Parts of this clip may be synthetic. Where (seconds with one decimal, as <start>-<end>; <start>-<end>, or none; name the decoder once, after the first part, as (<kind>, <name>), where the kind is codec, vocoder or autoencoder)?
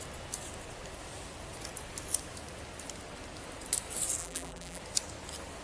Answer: 4.2-4.8 (vocoder, BigVGAN v2)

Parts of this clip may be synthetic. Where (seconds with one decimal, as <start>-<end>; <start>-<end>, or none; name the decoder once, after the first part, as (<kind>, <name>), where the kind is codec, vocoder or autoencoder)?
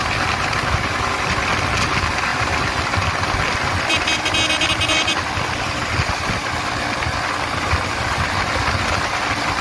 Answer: 2.3-5.2 (vocoder, BigVGAN v2)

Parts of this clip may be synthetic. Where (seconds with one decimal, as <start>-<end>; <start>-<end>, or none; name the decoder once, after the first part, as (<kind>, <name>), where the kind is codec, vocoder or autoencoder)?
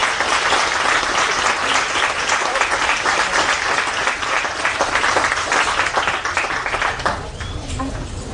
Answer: none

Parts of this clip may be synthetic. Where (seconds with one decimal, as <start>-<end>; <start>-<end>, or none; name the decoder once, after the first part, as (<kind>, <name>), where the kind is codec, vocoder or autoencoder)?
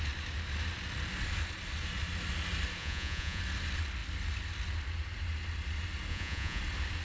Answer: 2.8-3.4 (vocoder, Vocos); 6.1-6.6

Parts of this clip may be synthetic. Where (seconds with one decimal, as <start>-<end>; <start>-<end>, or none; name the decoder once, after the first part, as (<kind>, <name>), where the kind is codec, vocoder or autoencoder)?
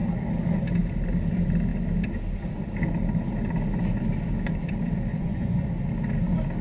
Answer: 5.1-5.7 (vocoder, Vocos)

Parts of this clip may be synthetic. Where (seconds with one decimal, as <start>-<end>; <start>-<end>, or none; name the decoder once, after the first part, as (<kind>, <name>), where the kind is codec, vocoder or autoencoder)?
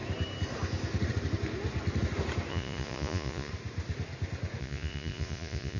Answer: 2.5-3.5 (vocoder, Vocos); 4.6-5.8